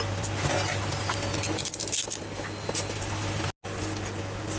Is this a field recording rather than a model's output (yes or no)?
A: yes